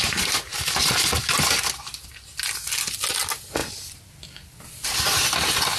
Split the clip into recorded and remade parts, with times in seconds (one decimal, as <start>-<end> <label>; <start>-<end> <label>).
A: 0.0-3.6 recorded; 3.6-5.8 remade